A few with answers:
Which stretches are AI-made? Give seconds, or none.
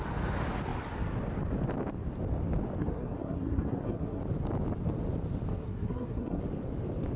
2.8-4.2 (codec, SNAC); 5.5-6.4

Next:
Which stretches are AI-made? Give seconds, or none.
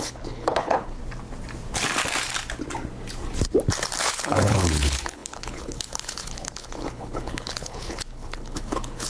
0.0-1.0 (codec, HILCodec); 4.0-9.1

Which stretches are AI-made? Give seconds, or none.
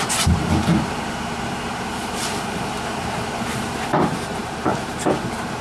0.0-5.6 (vocoder, BigVGAN v2)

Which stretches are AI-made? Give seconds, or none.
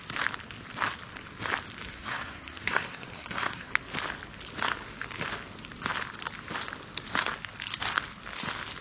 1.9-3.7 (codec, SNAC)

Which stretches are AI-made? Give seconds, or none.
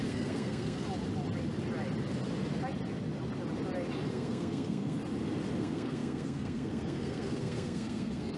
0.0-0.8 (codec, SNAC); 4.1-5.0; 5.6-8.4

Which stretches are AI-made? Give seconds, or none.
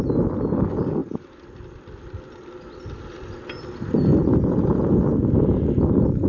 none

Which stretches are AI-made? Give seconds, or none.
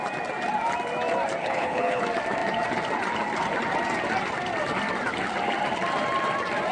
1.4-2.0 (codec, HILCodec)